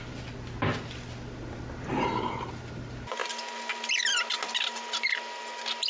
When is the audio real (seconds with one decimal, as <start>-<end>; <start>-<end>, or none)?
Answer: 0.0-1.9; 2.4-5.9